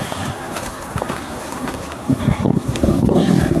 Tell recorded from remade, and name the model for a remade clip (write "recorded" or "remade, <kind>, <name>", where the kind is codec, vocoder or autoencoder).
remade, codec, SNAC